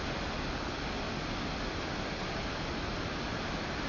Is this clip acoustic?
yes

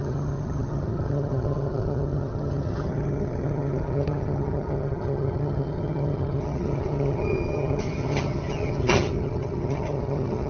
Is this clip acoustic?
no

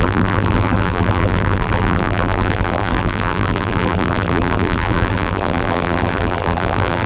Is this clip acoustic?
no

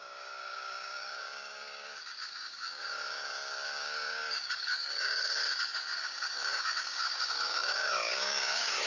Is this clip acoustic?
no